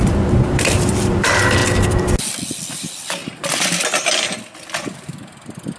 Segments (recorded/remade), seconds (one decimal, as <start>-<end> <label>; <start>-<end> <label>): 0.0-1.6 remade; 1.6-2.3 recorded; 2.3-3.2 remade; 3.2-5.8 recorded